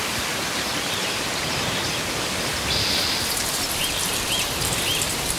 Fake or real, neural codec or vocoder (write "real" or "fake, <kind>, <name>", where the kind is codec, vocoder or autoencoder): fake, vocoder, BigVGAN v2